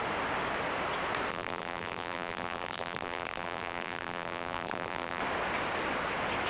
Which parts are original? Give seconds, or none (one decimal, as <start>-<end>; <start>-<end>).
0.0-1.3; 5.2-6.5